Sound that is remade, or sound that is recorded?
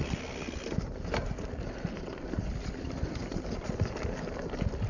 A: recorded